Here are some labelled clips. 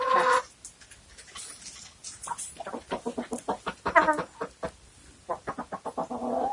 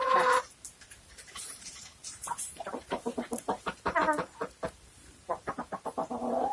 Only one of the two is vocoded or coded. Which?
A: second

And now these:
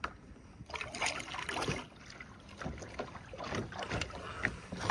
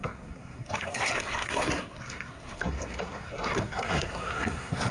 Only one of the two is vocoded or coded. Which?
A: second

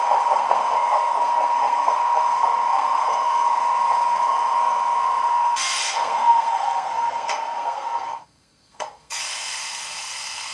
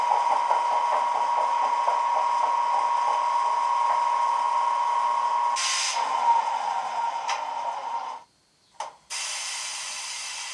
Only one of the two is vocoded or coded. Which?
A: first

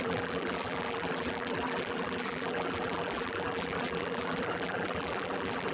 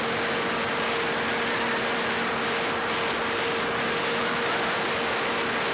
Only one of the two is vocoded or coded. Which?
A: first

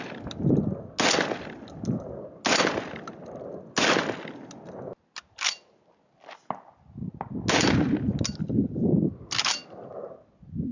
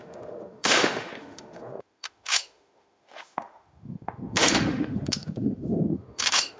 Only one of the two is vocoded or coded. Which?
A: second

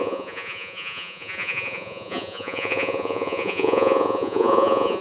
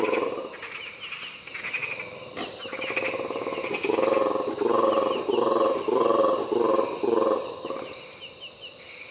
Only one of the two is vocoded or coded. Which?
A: first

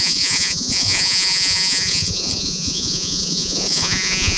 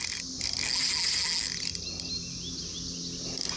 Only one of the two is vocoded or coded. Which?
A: first